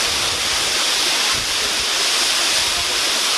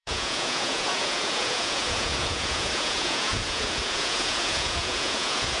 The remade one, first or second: second